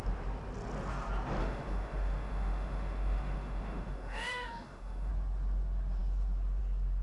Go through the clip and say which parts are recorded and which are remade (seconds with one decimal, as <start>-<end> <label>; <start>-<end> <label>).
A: 0.0-1.4 recorded; 1.4-5.1 remade; 5.1-7.0 recorded